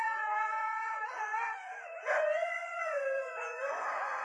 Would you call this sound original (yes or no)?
no